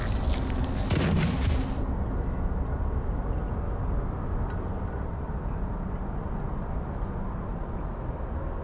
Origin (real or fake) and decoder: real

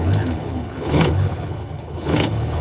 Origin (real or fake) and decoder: fake, codec, HILCodec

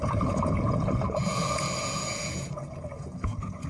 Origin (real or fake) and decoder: fake, vocoder, Vocos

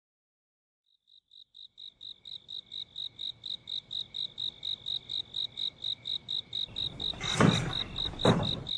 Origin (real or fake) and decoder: real